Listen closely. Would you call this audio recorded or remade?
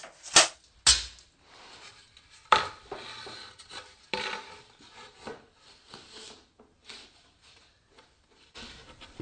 recorded